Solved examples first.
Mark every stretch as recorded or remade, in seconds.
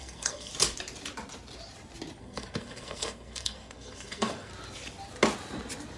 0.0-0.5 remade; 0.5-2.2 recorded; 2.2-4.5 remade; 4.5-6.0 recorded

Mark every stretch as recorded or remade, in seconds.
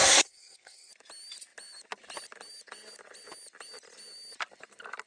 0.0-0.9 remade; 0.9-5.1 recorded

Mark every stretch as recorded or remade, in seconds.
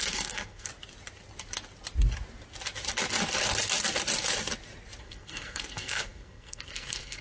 0.0-0.7 remade; 0.7-5.0 recorded; 5.0-7.2 remade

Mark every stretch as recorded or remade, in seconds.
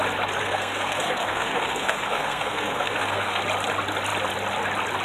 0.0-0.4 recorded; 0.4-3.4 remade; 3.4-5.0 recorded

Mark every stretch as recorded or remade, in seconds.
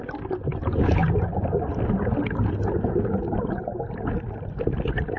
0.0-5.2 recorded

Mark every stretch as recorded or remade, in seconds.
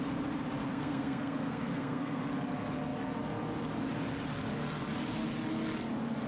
0.0-0.7 recorded; 0.7-2.2 remade; 2.2-6.3 recorded